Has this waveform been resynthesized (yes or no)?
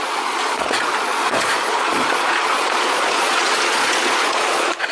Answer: yes